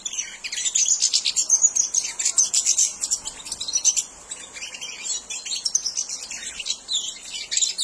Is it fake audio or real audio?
real